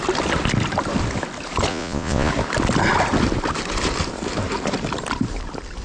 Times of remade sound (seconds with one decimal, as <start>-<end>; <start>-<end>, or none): 1.7-2.3